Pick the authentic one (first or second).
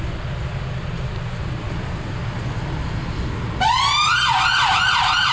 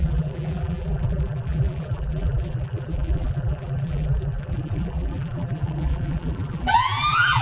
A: first